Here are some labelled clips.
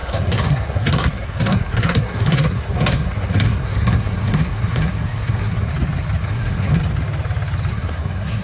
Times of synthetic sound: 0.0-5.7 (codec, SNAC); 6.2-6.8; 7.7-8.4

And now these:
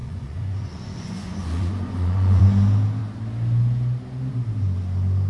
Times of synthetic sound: 0.0-2.4 (vocoder, Vocos)